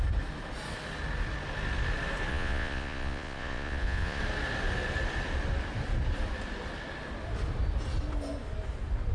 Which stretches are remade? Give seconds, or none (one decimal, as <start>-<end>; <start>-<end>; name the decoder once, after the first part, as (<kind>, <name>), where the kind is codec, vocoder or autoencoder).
2.3-4.2 (vocoder, Vocos)